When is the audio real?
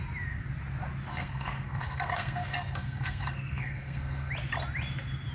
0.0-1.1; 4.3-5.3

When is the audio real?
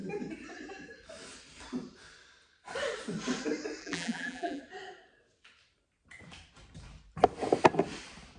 0.0-3.8; 4.6-8.4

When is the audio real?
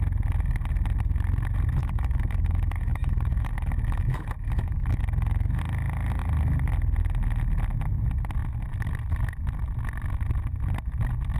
0.0-1.8; 5.6-11.4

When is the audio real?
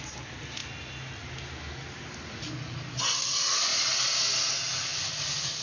0.0-5.6